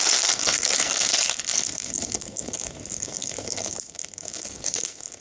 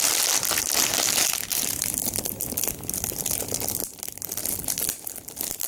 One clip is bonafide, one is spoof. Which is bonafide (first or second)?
second